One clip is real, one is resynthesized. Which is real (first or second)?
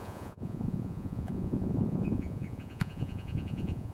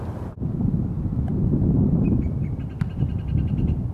second